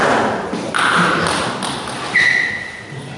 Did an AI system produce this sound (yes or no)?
no